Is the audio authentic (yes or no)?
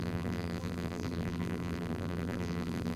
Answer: no